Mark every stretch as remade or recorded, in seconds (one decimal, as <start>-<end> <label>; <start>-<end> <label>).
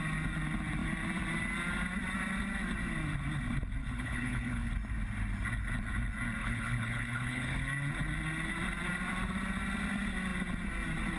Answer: 0.0-3.8 recorded; 3.8-4.7 remade; 4.7-6.4 recorded; 6.4-7.6 remade; 7.6-11.2 recorded